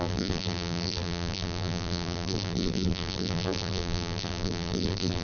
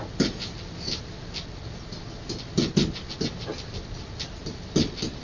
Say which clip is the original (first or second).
second